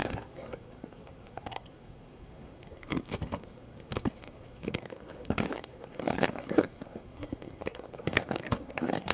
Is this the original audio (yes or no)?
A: no